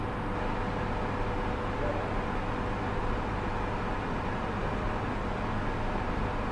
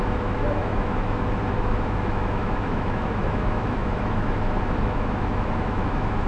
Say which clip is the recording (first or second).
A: first